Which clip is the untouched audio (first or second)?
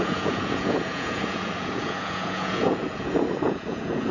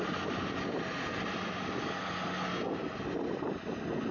second